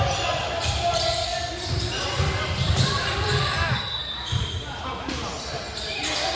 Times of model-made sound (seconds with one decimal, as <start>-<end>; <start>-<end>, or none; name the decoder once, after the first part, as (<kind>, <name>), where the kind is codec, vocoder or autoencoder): 1.3-5.1 (vocoder, BigVGAN v2)

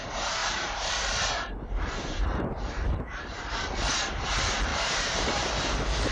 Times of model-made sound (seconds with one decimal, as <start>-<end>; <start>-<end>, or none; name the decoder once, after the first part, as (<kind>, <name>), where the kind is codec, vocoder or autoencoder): 0.4-3.9 (vocoder, BigVGAN v2); 4.7-5.5

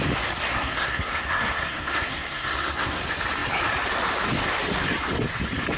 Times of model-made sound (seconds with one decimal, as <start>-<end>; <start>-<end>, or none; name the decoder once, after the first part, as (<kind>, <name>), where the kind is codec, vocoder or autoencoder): 0.5-3.0 (codec, SNAC)

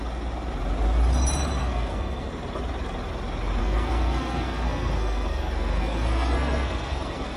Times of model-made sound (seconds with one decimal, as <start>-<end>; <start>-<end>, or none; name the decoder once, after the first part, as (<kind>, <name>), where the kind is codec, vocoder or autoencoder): 1.6-2.3 (codec, SNAC); 3.6-7.4

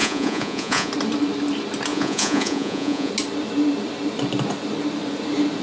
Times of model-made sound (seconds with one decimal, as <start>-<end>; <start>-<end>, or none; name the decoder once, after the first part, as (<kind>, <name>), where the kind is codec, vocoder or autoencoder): 0.0-0.9 (vocoder, Vocos); 1.9-3.1